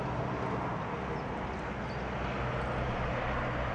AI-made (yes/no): no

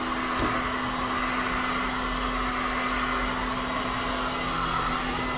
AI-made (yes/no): no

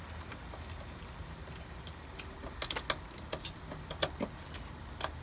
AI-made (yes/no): no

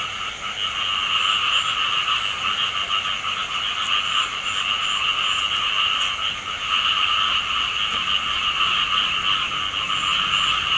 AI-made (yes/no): no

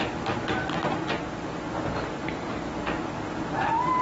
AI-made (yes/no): no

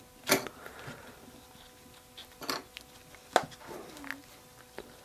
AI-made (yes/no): no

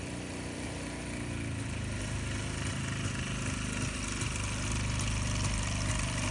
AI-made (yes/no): no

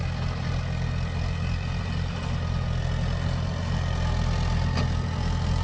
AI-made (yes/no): no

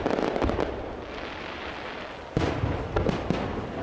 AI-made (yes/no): no